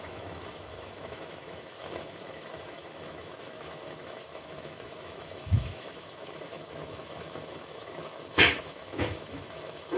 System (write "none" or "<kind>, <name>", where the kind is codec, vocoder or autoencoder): autoencoder, DAC-VAE